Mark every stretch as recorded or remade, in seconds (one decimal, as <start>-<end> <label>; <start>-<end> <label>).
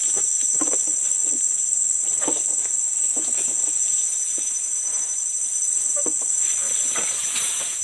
0.0-2.6 recorded; 2.6-4.8 remade; 4.8-7.2 recorded; 7.2-7.8 remade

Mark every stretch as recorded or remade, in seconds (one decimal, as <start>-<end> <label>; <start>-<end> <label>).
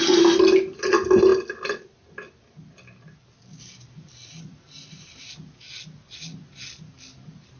0.0-7.6 recorded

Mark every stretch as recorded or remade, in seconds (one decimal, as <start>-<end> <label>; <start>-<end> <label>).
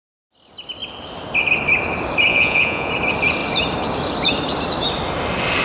0.0-2.3 recorded; 2.3-2.9 remade; 2.9-5.6 recorded